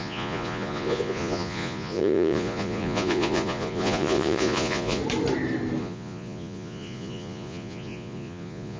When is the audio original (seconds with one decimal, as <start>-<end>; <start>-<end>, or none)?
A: 5.0-5.8